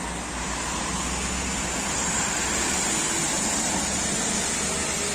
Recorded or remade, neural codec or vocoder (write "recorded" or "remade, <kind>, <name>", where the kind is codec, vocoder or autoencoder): recorded